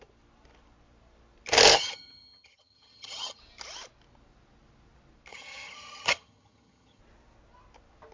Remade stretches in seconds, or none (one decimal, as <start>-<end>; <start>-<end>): 1.7-3.4; 5.3-7.0